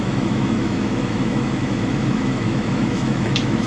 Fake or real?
fake